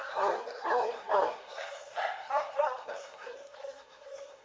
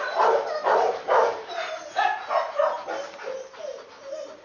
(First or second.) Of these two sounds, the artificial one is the first